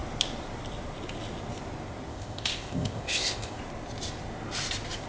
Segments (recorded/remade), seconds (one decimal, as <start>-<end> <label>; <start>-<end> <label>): 0.0-2.1 recorded; 2.1-3.6 remade; 3.6-5.1 recorded